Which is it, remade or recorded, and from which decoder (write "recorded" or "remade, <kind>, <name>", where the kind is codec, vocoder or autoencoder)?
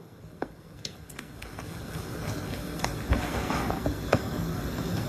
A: remade, codec, SNAC